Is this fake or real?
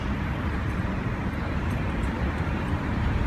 fake